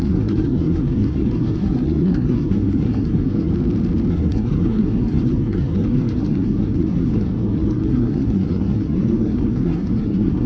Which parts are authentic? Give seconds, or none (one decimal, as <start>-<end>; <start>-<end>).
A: 3.5-4.1